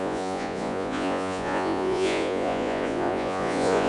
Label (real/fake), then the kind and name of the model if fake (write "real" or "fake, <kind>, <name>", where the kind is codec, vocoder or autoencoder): fake, vocoder, Vocos